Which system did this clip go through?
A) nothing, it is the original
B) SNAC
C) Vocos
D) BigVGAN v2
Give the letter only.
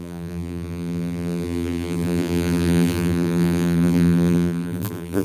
D